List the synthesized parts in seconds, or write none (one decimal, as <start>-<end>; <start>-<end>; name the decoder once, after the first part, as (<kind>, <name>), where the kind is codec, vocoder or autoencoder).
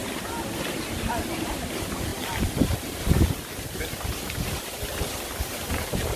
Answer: 1.3-2.1 (vocoder, BigVGAN v2); 5.8-6.2